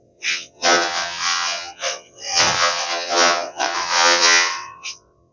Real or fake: fake